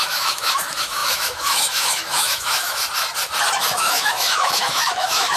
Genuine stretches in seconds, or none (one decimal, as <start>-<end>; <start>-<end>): 2.8-3.6